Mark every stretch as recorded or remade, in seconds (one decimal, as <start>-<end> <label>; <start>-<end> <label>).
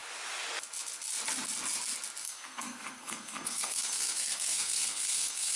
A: 0.0-2.2 recorded; 2.2-5.6 remade